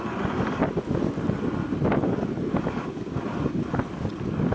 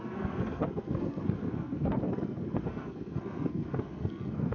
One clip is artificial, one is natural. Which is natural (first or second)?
first